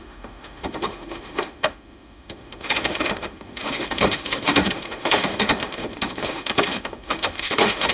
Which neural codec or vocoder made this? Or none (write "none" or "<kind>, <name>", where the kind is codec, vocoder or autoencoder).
autoencoder, DAC-VAE